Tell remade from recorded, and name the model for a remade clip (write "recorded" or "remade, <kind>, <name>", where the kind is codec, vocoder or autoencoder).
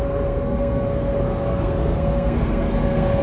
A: remade, codec, SNAC